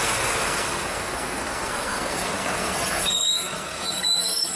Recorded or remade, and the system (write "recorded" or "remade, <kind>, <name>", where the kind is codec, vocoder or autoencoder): remade, codec, SNAC